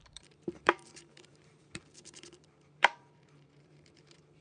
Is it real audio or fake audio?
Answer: fake